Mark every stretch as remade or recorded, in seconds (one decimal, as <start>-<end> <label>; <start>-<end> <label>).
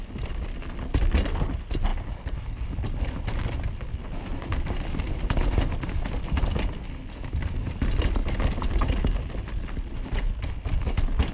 0.0-11.3 recorded